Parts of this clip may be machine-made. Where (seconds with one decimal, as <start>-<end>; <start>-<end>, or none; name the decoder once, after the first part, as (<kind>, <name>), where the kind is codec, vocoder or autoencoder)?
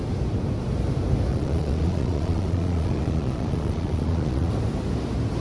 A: 1.3-4.5 (vocoder, Vocos)